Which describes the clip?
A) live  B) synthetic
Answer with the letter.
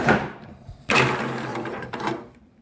B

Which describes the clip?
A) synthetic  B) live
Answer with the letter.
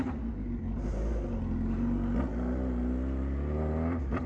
B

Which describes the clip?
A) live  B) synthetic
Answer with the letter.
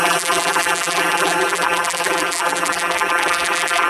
B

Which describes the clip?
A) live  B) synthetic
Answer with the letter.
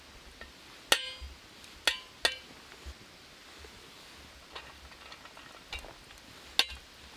A